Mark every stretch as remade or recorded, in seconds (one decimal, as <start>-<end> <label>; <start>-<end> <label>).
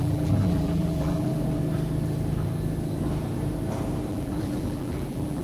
0.0-1.3 remade; 1.3-4.1 recorded; 4.1-5.4 remade